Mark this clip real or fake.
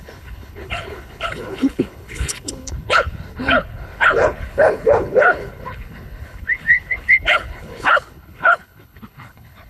fake